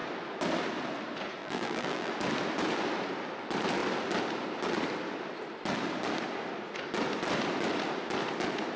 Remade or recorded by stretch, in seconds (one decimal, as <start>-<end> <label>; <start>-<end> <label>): 0.0-1.4 recorded; 1.4-2.1 remade; 2.1-8.8 recorded